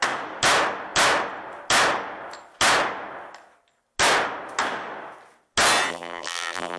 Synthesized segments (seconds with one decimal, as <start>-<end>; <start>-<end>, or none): 5.9-6.8